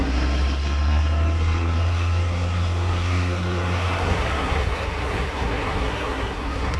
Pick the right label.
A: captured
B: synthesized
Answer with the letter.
B